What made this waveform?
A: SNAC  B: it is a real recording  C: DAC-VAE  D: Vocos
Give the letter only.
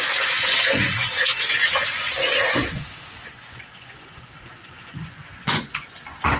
D